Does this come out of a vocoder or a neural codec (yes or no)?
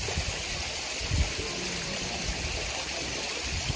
no